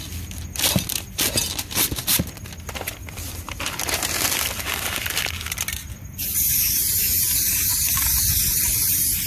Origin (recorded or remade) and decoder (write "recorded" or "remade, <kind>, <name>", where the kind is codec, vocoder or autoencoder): recorded